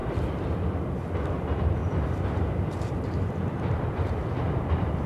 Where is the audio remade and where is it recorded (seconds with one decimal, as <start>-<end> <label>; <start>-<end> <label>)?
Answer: 0.0-1.8 recorded; 1.8-4.1 remade; 4.1-5.1 recorded